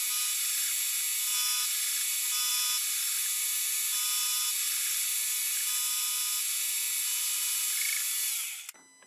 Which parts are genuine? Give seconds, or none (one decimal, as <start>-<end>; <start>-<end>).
0.0-9.1